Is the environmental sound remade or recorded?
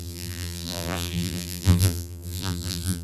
remade